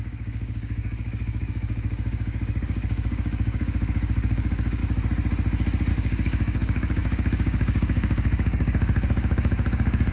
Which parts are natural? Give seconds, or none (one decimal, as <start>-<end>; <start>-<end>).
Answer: 4.8-5.9